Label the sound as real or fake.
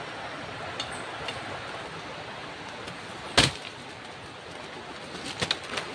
real